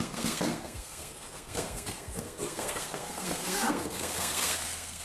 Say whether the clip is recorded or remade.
remade